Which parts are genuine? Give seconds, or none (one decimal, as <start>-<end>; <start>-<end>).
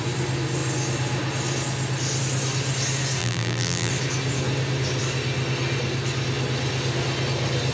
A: 0.0-3.2; 3.9-7.7